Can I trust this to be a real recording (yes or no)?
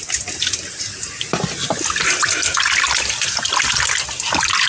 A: yes